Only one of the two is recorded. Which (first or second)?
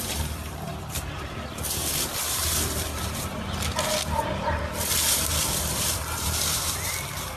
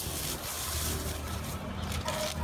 second